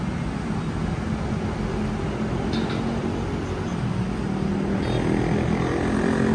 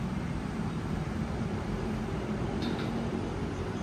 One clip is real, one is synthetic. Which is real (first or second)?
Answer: first